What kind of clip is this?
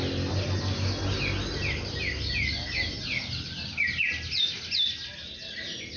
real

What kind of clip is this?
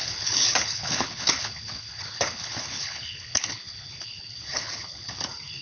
fake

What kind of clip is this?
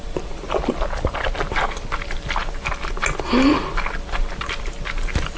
real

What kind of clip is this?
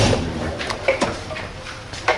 fake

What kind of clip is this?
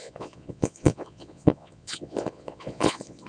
fake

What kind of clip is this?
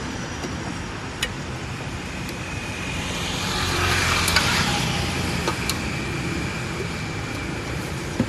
fake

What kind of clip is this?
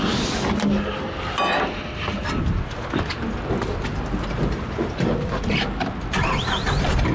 real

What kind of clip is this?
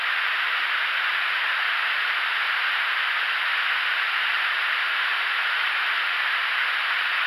fake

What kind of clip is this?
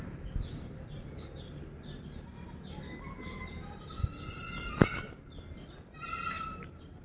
real